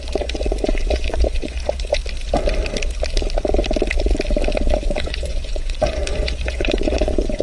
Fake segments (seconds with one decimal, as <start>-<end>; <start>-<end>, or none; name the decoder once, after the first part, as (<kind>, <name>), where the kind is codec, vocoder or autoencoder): 0.0-2.0 (vocoder, Vocos); 4.7-7.4